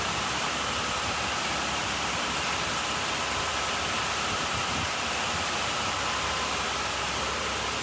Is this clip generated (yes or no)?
no